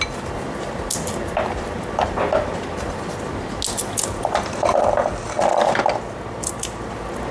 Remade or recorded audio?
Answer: recorded